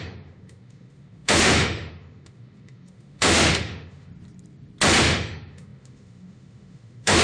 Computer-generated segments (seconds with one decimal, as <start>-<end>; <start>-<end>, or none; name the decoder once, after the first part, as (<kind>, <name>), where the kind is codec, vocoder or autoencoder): 0.0-4.1 (autoencoder, DAC-VAE); 5.0-7.2